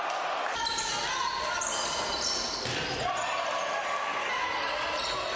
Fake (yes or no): no